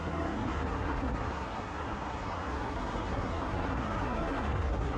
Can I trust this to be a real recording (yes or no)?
no